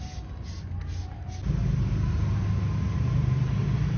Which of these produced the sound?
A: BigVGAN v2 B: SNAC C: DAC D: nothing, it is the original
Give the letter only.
D